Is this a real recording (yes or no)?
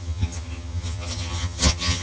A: no